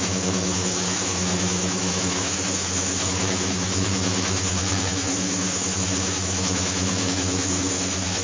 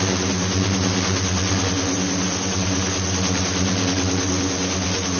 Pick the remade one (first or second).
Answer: first